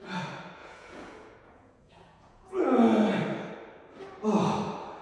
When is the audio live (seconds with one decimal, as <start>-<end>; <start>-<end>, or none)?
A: 0.0-0.6; 2.6-5.0